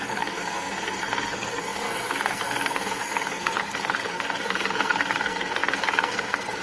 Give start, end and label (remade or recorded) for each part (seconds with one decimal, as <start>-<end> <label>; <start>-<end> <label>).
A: 0.0-6.6 remade